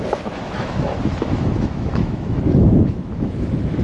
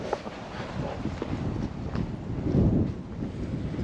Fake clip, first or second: first